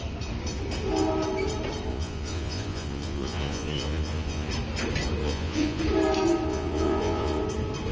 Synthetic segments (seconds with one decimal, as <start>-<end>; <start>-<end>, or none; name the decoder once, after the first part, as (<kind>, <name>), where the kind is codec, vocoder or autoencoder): 1.9-4.5 (vocoder, Vocos); 5.2-5.8; 6.5-7.4